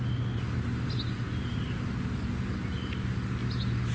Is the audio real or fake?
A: real